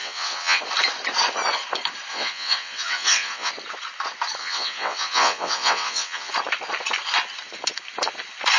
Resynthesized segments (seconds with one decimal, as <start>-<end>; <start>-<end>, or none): 0.0-0.6; 2.1-3.5; 4.4-6.3